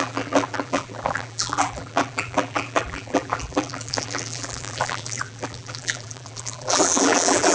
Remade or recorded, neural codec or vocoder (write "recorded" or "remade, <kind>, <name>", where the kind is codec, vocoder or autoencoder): remade, vocoder, BigVGAN v2